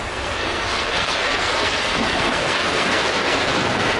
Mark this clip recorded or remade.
remade